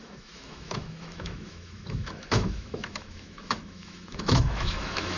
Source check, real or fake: fake